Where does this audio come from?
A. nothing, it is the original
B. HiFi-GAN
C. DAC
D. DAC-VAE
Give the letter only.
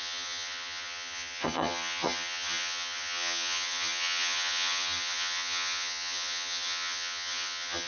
B